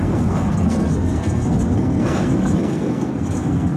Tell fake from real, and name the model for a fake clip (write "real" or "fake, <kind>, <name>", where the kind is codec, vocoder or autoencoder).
fake, codec, SNAC